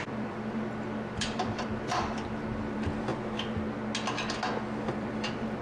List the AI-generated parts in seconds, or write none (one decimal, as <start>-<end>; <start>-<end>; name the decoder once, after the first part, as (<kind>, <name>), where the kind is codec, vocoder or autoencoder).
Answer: 0.0-3.1 (vocoder, BigVGAN v2); 4.9-5.6